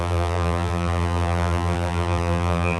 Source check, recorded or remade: remade